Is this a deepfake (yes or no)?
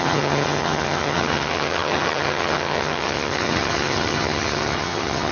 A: yes